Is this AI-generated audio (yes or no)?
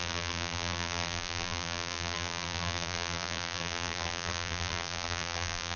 yes